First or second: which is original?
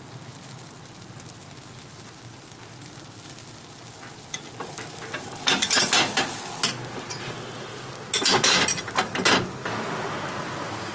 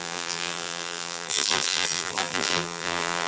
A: first